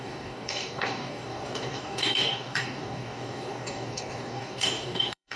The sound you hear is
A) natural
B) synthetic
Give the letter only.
B